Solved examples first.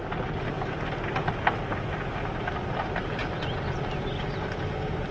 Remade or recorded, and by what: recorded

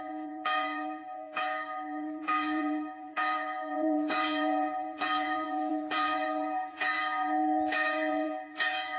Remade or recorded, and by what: remade, vocoder, Vocos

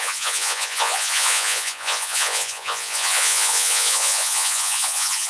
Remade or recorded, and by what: remade, vocoder, Vocos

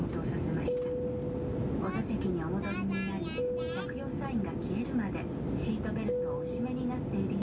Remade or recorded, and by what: recorded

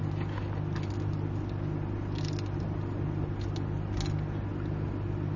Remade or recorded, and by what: recorded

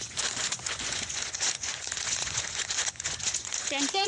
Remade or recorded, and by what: remade, vocoder, Vocos